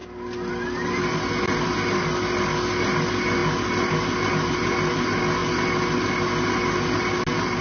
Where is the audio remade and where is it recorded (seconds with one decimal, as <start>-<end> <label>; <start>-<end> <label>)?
0.0-7.6 recorded